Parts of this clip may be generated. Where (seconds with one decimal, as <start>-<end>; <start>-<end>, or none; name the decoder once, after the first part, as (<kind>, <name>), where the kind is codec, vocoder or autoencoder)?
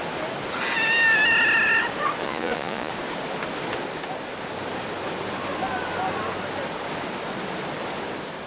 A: 2.2-2.9 (vocoder, Vocos)